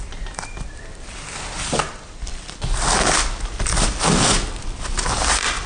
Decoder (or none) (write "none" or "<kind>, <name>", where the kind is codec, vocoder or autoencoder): none